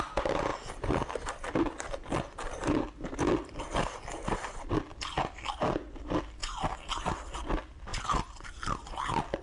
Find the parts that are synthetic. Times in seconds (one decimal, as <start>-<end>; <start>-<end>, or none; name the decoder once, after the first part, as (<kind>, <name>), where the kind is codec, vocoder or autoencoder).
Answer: 0.0-6.4 (vocoder, BigVGAN v2); 7.0-7.9; 8.5-9.4